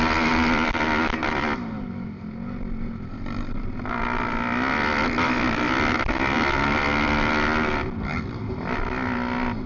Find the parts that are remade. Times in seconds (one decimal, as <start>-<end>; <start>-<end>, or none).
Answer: none